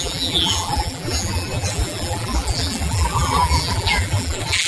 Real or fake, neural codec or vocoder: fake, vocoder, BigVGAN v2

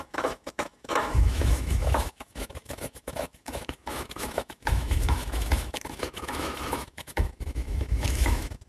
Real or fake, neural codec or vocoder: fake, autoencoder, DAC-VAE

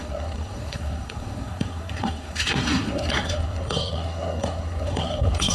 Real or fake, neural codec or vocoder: fake, codec, SNAC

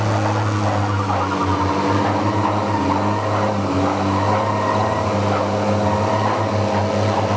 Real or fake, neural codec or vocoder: real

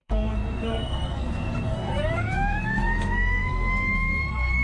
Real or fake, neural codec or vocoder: fake, codec, SNAC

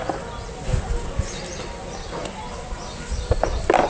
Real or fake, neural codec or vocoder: real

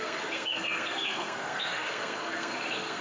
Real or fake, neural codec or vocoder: fake, codec, SNAC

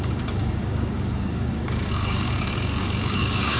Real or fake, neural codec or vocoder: fake, codec, DAC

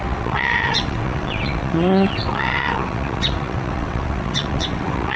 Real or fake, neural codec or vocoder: fake, vocoder, WaveNeXt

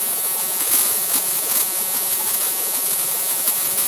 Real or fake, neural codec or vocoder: fake, vocoder, Vocos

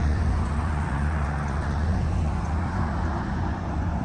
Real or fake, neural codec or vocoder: fake, vocoder, Vocos